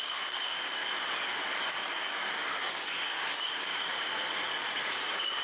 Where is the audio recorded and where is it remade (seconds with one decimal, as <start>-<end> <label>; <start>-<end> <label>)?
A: 0.0-0.8 remade; 0.8-1.7 recorded; 1.7-3.7 remade; 3.7-4.6 recorded; 4.6-5.4 remade